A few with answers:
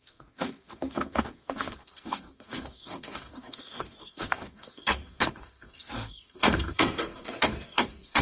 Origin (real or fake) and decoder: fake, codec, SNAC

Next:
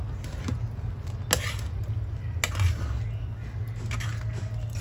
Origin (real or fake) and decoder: real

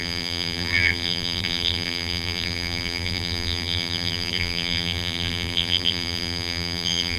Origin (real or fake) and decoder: fake, vocoder, BigVGAN v2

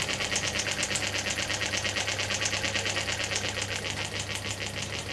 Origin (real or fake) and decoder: real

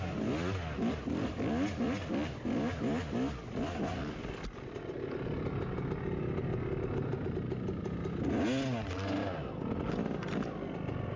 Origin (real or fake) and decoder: real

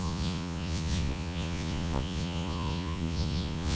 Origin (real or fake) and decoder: fake, vocoder, Vocos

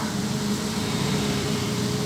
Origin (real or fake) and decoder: fake, vocoder, BigVGAN v2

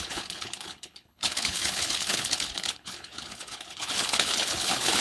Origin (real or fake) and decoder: fake, codec, HILCodec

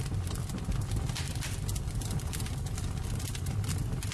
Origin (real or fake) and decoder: real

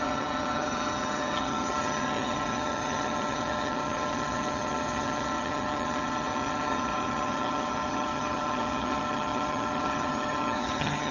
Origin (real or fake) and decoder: fake, vocoder, HiFi-GAN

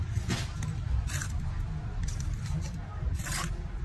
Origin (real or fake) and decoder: real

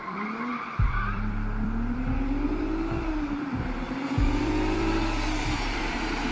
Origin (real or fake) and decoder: fake, vocoder, BigVGAN v2